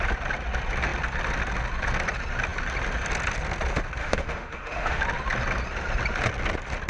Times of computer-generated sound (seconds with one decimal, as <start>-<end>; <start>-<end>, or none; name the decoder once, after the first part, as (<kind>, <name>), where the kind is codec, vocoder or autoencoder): 4.0-5.0 (autoencoder, DAC-VAE)

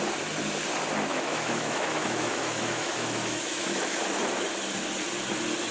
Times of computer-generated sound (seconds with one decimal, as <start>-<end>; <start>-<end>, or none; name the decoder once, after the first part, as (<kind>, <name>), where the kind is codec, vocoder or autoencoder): 1.1-4.0 (autoencoder, DAC-VAE)

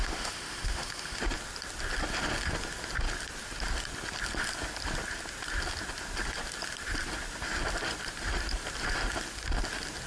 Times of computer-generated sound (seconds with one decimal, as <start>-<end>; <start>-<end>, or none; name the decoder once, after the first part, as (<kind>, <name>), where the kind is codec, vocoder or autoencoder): 0.0-1.2 (autoencoder, DAC-VAE)

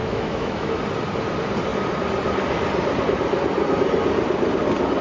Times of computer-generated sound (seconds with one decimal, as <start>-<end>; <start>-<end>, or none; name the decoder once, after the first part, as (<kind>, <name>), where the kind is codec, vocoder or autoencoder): 0.0-0.8 (autoencoder, DAC-VAE)

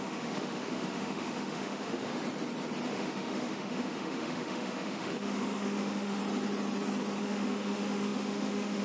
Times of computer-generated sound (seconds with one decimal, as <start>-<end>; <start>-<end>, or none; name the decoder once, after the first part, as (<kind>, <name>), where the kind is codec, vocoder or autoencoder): 0.0-2.1 (autoencoder, DAC-VAE); 2.9-6.2; 7.2-8.8